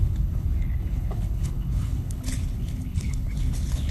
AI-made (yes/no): yes